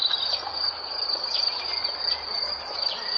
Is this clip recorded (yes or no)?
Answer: yes